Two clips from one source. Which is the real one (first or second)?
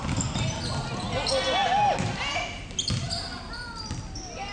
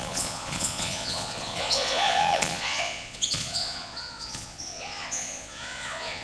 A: first